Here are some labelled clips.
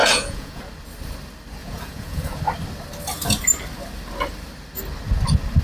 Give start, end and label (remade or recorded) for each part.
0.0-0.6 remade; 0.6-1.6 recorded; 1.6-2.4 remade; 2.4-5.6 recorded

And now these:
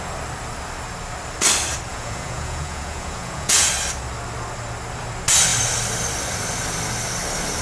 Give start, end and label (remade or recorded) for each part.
0.0-1.9 recorded; 1.9-3.7 remade; 3.7-7.6 recorded